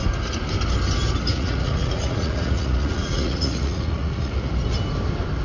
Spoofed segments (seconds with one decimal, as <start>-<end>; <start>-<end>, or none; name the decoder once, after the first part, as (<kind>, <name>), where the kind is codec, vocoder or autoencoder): 1.3-4.5 (vocoder, Vocos)